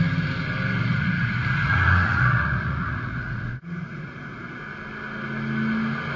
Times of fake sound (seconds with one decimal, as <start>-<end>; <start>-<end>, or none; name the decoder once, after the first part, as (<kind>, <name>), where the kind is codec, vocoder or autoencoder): 0.9-4.6 (vocoder, Vocos)